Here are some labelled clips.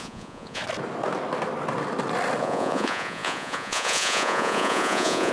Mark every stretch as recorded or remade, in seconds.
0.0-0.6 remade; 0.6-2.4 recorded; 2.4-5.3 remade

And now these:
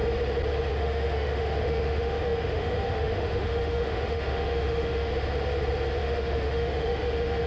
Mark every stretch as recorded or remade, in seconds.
0.0-0.7 recorded; 0.7-5.1 remade; 5.1-6.0 recorded; 6.0-7.5 remade

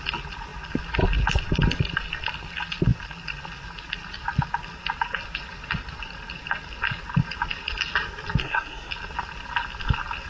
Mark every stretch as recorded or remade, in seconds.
0.0-8.4 recorded; 8.4-8.9 remade; 8.9-10.3 recorded